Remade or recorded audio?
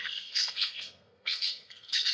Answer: remade